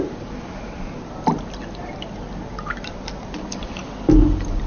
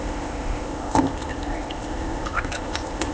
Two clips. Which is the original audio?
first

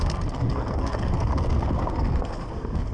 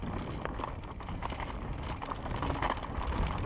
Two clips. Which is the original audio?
second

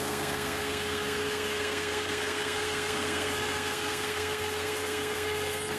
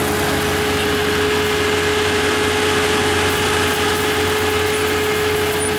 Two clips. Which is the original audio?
second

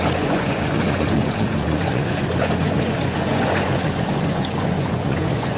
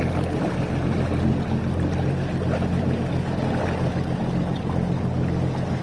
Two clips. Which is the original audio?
second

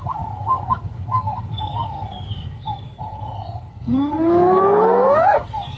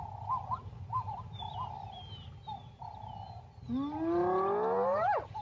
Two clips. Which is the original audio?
second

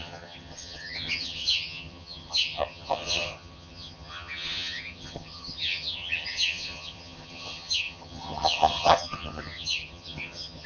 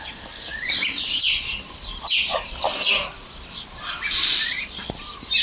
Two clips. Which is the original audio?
second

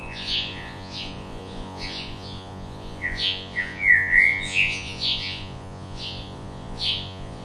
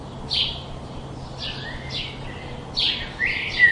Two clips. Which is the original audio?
second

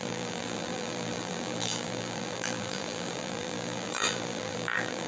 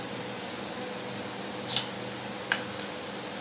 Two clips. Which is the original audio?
second